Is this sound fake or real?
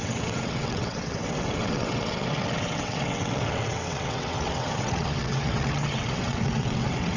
fake